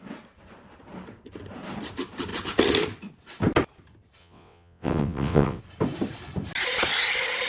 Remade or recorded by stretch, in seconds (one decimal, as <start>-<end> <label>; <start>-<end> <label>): 0.0-4.2 recorded; 4.2-5.6 remade; 5.6-7.5 recorded